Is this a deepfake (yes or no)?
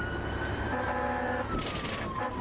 no